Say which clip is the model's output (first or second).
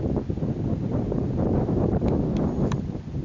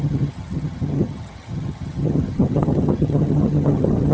second